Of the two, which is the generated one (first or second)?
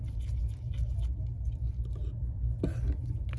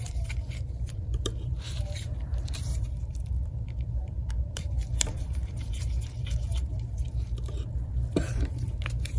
second